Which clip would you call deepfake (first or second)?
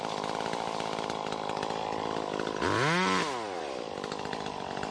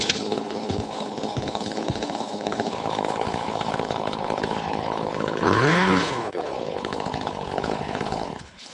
second